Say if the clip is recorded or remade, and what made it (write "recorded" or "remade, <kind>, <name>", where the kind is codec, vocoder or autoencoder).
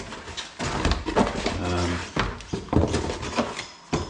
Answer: recorded